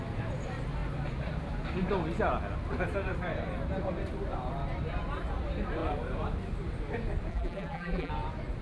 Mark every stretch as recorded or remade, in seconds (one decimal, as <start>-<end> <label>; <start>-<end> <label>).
0.0-7.3 recorded; 7.3-8.1 remade; 8.1-8.6 recorded